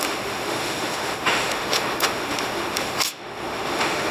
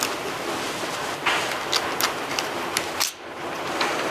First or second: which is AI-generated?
first